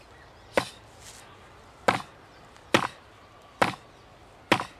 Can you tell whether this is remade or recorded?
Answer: recorded